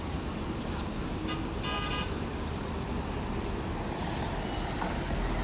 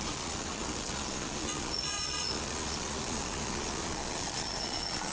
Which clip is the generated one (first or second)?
second